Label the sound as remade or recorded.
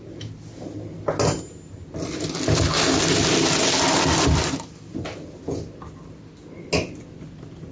recorded